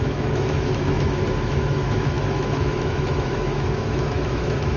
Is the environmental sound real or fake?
fake